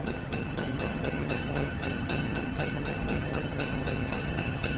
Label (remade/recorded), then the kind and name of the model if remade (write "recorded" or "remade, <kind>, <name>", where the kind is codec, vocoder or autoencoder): remade, vocoder, HiFi-GAN